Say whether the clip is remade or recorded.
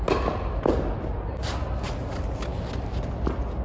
recorded